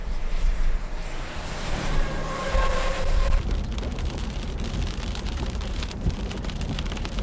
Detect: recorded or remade remade